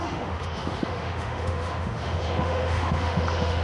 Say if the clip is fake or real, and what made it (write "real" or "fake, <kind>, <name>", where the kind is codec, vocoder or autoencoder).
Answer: fake, autoencoder, DAC-VAE